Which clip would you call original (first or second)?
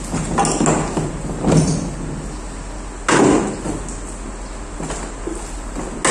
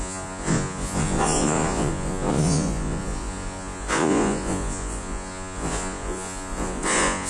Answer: first